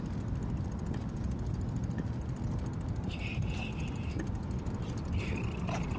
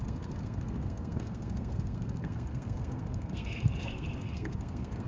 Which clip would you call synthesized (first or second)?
second